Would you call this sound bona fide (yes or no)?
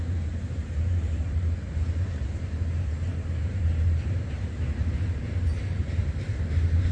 no